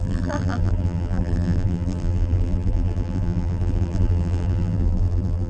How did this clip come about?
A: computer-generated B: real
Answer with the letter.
A